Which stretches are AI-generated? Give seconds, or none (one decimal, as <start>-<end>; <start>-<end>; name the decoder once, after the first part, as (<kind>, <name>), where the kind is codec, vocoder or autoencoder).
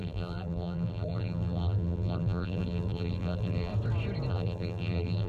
0.0-3.7 (vocoder, BigVGAN v2); 4.3-5.3